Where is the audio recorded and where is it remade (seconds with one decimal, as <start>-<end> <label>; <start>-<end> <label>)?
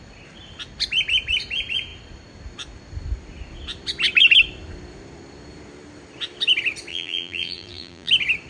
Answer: 0.0-6.9 recorded; 6.9-8.1 remade; 8.1-8.5 recorded